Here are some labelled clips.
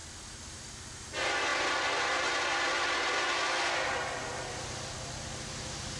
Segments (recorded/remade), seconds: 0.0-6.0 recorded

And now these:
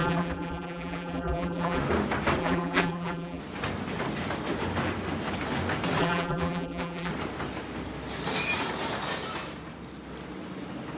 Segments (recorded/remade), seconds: 0.0-1.8 remade; 1.8-2.4 recorded; 2.4-3.4 remade; 3.4-6.0 recorded; 6.0-7.1 remade; 7.1-11.0 recorded